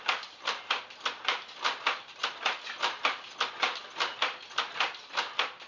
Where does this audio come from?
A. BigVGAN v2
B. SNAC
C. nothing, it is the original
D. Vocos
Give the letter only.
C